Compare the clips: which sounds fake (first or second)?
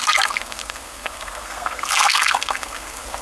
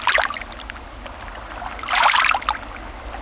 first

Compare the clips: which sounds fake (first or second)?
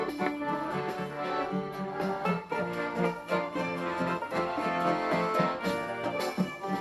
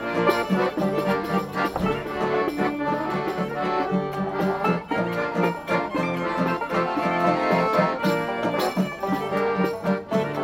first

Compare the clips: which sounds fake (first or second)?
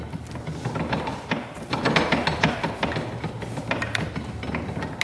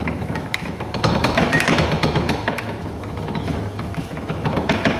second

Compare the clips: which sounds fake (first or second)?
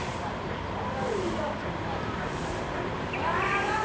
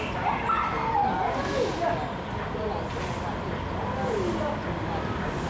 first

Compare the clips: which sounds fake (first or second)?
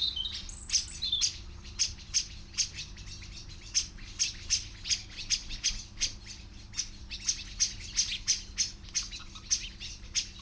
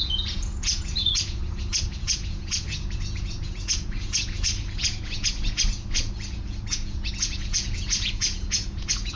second